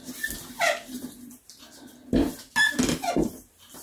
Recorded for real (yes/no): yes